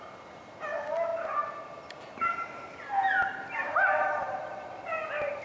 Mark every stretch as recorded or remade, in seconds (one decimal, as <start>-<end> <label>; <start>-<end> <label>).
0.0-3.2 recorded; 3.2-4.7 remade; 4.7-5.4 recorded